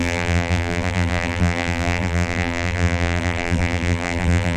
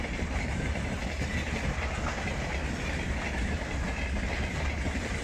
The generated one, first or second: first